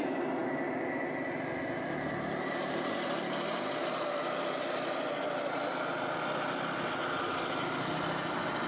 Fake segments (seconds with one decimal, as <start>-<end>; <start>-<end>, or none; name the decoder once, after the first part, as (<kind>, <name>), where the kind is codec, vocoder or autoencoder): none